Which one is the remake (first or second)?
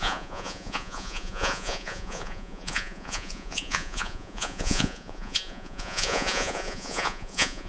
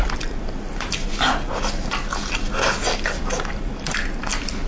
first